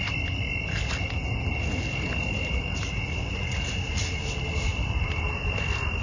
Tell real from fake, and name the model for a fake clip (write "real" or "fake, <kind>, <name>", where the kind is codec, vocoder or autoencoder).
real